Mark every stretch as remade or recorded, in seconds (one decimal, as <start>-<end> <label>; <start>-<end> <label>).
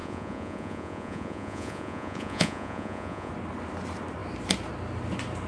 0.0-3.3 remade; 3.3-5.5 recorded